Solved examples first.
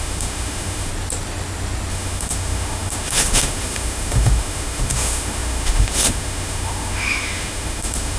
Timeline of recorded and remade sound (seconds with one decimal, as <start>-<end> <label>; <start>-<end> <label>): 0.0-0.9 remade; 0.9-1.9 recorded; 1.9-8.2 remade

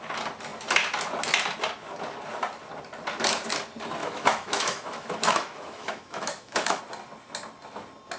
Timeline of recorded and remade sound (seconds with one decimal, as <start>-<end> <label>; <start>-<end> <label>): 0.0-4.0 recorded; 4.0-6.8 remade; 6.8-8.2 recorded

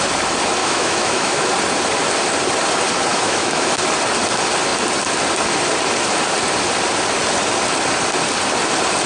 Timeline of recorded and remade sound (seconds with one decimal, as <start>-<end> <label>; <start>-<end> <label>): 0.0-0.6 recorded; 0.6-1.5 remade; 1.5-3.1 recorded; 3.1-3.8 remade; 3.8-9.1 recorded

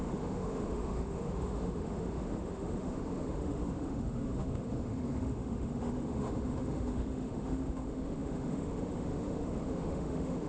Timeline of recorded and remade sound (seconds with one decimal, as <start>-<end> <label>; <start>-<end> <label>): 0.0-10.5 remade

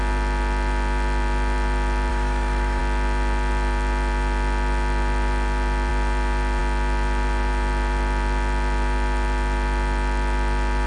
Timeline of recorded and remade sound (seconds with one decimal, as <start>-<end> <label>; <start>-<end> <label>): 0.0-2.1 recorded; 2.1-2.8 remade; 2.8-10.9 recorded

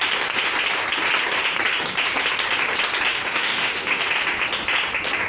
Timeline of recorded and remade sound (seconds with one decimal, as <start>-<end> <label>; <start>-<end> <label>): 0.0-3.1 recorded; 3.1-4.0 remade; 4.0-5.3 recorded